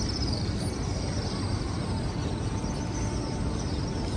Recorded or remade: recorded